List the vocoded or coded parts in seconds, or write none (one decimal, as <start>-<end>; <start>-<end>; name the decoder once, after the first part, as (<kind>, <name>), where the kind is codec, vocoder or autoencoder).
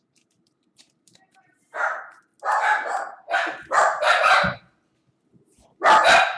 0.0-2.3 (vocoder, BigVGAN v2)